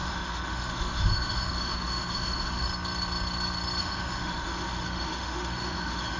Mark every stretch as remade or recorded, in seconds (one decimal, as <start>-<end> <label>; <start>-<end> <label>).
0.0-2.7 remade; 2.7-3.8 recorded; 3.8-6.2 remade